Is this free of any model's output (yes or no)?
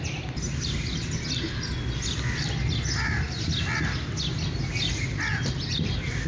yes